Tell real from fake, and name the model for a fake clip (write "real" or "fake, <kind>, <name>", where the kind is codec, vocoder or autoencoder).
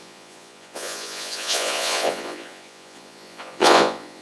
fake, vocoder, Vocos